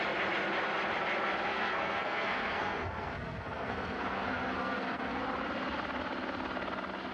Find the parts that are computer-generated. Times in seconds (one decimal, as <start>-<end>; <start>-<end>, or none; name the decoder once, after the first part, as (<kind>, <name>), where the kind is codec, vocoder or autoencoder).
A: 1.5-5.2 (codec, SNAC)